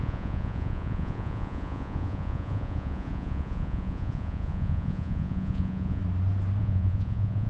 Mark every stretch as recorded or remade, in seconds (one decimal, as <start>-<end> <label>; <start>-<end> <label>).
0.0-6.0 remade; 6.0-6.6 recorded; 6.6-7.5 remade